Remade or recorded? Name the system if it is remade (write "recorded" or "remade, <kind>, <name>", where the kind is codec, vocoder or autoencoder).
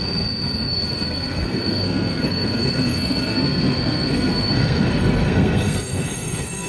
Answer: remade, codec, SNAC